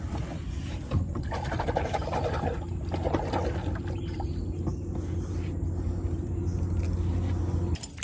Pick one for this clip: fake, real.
real